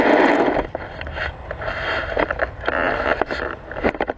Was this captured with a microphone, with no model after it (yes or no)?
yes